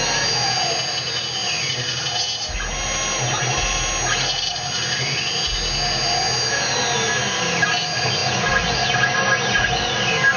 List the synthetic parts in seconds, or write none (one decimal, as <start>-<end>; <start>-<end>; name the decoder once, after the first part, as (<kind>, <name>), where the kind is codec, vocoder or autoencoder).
none

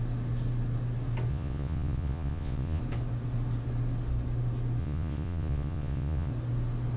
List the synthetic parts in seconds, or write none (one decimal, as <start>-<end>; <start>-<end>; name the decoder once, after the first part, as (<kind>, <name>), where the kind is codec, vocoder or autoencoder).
1.3-2.8 (vocoder, Vocos); 4.8-6.3

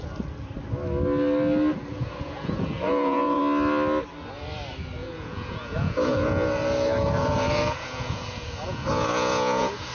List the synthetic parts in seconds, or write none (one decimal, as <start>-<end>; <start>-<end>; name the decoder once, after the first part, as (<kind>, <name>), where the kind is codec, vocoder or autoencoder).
1.9-3.4 (vocoder, Vocos); 5.0-9.9